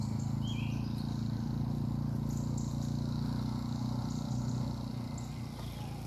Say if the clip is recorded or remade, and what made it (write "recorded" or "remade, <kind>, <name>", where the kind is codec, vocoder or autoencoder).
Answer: recorded